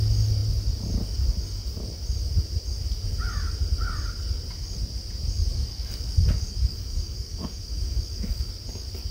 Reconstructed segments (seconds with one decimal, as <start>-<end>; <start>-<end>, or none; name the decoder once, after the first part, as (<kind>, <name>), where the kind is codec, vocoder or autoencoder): 5.5-8.5 (codec, DAC)

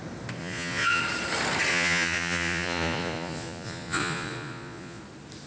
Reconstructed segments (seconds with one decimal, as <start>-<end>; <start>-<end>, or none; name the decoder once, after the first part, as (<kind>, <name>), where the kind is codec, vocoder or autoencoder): 0.4-1.0 (vocoder, Vocos); 1.7-5.0

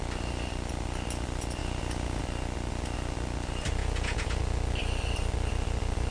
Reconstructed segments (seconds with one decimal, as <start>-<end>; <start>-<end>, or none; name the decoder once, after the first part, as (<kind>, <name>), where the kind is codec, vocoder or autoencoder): 1.6-2.2 (vocoder, Vocos); 3.8-4.4

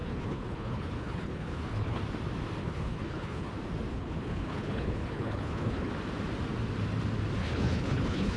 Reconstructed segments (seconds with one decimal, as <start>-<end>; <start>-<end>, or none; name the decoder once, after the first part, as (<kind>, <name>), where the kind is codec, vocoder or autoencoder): 0.0-2.0 (codec, HILCodec); 2.6-3.5; 3.9-5.9; 7.4-8.4

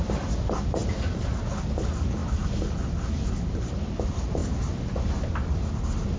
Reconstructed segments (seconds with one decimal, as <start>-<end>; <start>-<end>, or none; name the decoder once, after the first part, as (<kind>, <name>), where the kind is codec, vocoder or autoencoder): none